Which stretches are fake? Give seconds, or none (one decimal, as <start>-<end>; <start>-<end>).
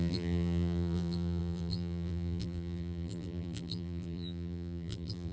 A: 0.0-5.3